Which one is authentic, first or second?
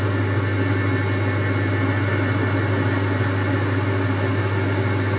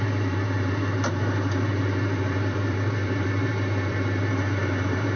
first